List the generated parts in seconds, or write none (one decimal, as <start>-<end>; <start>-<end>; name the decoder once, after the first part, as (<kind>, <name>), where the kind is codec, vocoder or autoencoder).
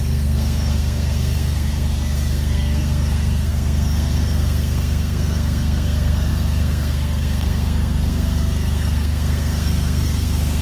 0.0-10.6 (codec, SNAC)